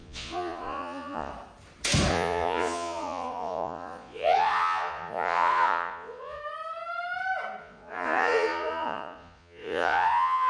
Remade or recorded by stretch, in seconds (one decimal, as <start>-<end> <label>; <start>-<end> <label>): 0.0-1.3 remade; 1.3-2.1 recorded; 2.1-6.4 remade; 6.4-7.6 recorded; 7.6-10.5 remade